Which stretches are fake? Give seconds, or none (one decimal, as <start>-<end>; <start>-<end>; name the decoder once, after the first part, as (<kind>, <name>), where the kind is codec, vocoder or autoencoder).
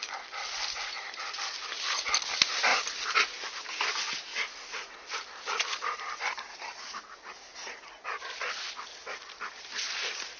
4.3-5.0 (vocoder, Vocos)